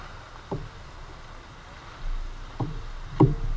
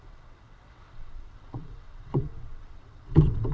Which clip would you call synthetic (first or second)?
second